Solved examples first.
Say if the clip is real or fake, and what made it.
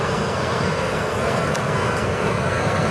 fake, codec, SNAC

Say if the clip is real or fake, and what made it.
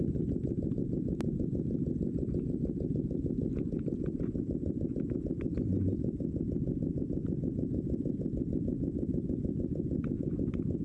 real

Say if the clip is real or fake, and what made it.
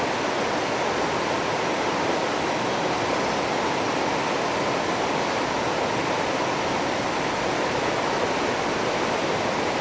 real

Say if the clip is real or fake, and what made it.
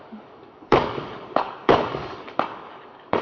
fake, codec, DAC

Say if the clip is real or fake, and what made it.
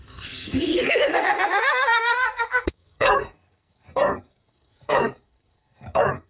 fake, codec, SNAC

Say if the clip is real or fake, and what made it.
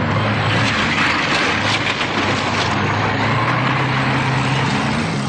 real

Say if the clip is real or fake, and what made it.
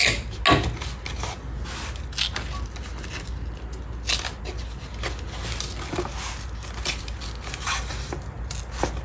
real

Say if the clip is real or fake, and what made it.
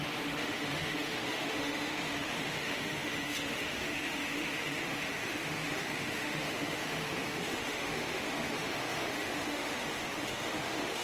fake, autoencoder, DAC-VAE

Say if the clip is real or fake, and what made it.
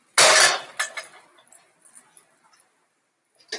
real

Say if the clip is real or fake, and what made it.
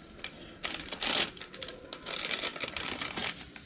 real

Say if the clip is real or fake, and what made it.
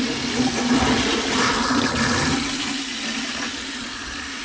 real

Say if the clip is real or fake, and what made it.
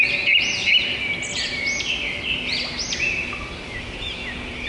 real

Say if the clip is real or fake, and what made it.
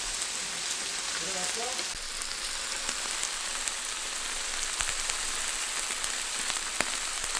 real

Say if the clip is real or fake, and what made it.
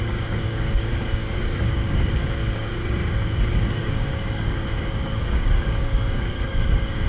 fake, codec, DAC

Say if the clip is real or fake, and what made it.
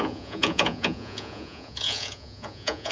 fake, vocoder, Vocos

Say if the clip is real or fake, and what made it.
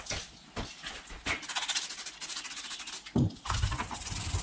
real